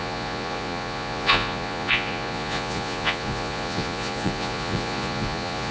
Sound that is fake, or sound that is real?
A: fake